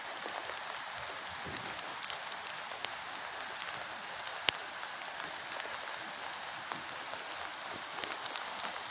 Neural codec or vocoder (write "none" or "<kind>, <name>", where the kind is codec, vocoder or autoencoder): none